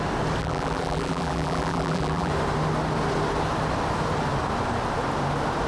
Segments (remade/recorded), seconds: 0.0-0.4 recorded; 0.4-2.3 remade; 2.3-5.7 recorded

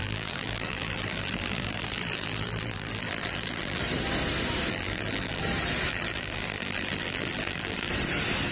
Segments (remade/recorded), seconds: 0.0-3.8 remade; 3.8-4.7 recorded; 4.7-5.4 remade; 5.4-5.9 recorded; 5.9-7.9 remade; 7.9-8.5 recorded